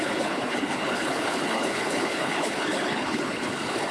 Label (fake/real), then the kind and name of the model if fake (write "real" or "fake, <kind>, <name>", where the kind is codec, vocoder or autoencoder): fake, codec, HILCodec